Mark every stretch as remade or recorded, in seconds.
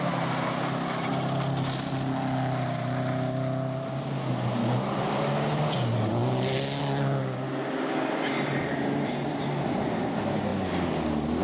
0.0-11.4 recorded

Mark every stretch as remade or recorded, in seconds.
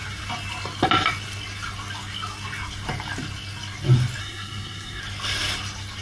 0.0-4.2 recorded; 4.2-5.0 remade; 5.0-6.0 recorded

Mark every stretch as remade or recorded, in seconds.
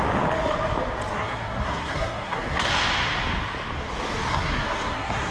0.0-1.1 recorded; 1.1-2.7 remade; 2.7-4.3 recorded; 4.3-5.3 remade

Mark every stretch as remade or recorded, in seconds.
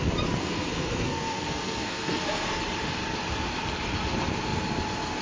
0.0-0.4 recorded; 0.4-2.5 remade; 2.5-5.2 recorded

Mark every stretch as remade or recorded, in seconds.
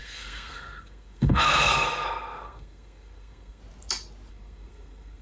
0.0-3.6 remade; 3.6-4.3 recorded; 4.3-5.2 remade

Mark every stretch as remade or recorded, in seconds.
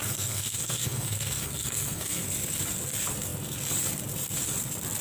0.0-2.2 remade; 2.2-5.0 recorded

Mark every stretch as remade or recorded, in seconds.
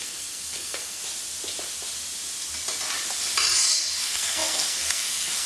0.0-1.0 remade; 1.0-4.0 recorded; 4.0-5.5 remade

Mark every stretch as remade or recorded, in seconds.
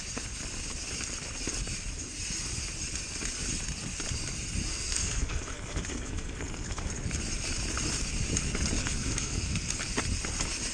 0.0-4.7 recorded; 4.7-6.9 remade; 6.9-8.8 recorded; 8.8-9.7 remade; 9.7-10.7 recorded